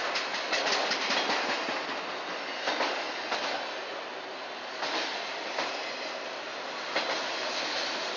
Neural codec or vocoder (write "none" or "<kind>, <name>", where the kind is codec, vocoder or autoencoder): none